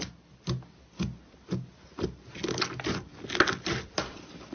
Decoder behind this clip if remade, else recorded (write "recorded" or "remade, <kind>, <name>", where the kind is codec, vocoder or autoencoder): recorded